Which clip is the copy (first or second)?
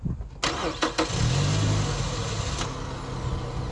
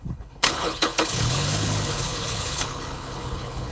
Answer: second